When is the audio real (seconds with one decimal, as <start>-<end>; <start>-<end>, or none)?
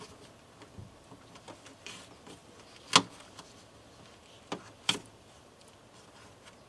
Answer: 0.0-6.7